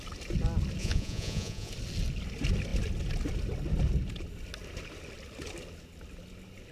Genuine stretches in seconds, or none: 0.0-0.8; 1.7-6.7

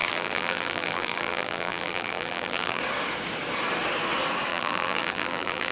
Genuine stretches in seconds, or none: 2.8-4.5

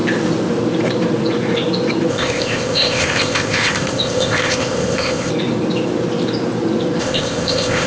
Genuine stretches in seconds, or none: 0.0-2.1; 5.3-7.0